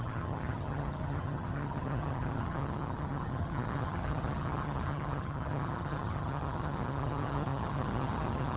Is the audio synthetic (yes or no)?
yes